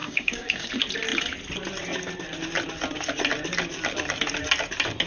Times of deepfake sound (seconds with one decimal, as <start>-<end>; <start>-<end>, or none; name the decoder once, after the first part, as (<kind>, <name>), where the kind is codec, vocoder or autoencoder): 0.0-0.7 (codec, DAC)